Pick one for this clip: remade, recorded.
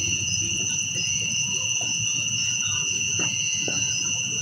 remade